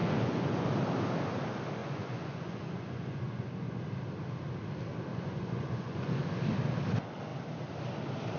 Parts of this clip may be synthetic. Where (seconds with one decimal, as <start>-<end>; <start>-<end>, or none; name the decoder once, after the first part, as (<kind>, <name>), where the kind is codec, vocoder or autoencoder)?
0.0-0.7 (vocoder, Vocos); 1.8-3.8; 5.1-6.2